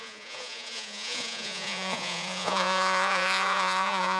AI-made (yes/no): yes